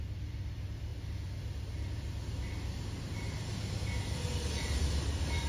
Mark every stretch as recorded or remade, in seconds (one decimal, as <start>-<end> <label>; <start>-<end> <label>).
0.0-5.5 recorded